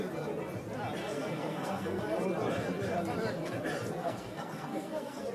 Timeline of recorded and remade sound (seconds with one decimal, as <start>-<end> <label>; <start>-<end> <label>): 0.0-1.1 recorded; 1.1-2.0 remade; 2.0-4.0 recorded; 4.0-5.3 remade